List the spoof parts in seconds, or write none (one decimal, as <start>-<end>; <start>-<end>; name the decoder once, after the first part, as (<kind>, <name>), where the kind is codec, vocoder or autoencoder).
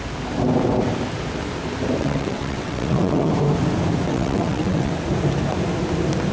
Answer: 2.0-3.3 (vocoder, WaveNeXt); 4.1-4.9